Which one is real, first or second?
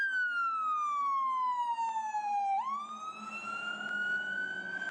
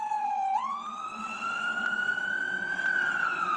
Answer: first